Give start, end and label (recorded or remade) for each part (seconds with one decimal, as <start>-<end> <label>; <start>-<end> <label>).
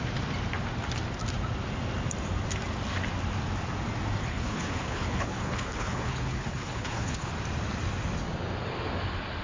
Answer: 0.0-4.2 recorded; 4.2-7.3 remade; 7.3-9.4 recorded